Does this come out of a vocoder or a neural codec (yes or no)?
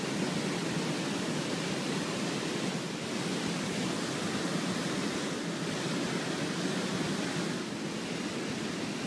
no